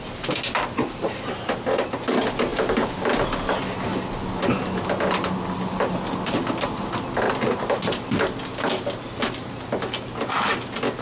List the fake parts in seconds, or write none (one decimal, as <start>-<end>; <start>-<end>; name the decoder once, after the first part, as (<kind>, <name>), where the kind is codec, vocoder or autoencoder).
none